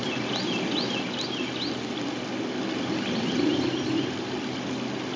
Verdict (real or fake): real